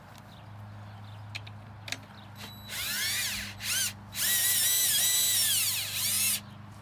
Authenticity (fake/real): real